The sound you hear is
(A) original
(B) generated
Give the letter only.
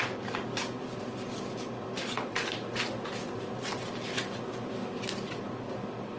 A